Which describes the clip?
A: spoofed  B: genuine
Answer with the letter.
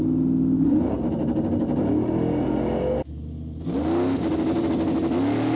B